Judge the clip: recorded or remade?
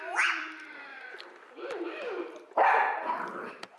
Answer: remade